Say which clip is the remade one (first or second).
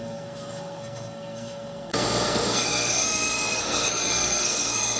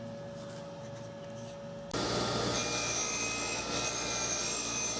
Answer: first